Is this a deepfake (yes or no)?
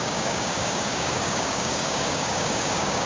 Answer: yes